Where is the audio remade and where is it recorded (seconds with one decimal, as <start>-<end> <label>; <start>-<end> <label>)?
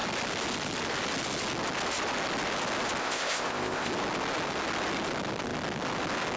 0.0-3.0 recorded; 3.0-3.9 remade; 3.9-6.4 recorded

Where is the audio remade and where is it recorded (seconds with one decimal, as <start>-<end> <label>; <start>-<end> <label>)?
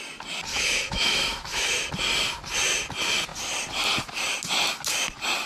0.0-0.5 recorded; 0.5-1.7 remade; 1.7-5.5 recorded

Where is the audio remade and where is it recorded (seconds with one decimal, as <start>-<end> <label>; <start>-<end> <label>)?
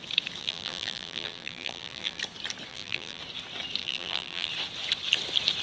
0.0-0.4 recorded; 0.4-2.2 remade; 2.2-2.7 recorded; 2.7-3.2 remade; 3.2-3.8 recorded; 3.8-4.5 remade; 4.5-5.6 recorded